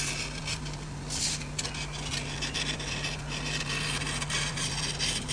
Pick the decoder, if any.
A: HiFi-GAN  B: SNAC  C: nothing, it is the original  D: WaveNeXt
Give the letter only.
C